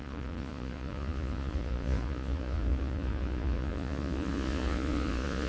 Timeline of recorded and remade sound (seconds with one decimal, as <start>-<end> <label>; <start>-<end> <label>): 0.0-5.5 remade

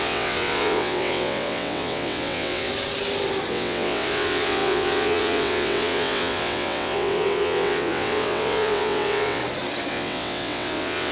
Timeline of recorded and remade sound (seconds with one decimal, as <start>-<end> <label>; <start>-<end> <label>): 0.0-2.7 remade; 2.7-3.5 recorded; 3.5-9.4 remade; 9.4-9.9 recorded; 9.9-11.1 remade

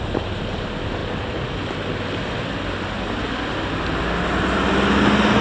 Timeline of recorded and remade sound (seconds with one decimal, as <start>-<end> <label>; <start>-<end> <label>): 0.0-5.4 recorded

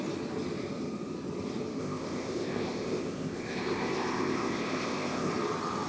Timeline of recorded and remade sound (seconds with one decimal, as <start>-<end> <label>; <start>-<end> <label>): 0.0-1.8 recorded; 1.8-5.3 remade; 5.3-5.9 recorded

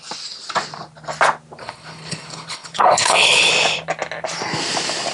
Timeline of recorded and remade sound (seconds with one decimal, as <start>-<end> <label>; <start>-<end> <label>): 0.0-1.6 recorded; 1.6-3.5 remade; 3.5-5.1 recorded